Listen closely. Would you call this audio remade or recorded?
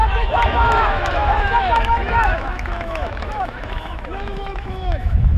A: remade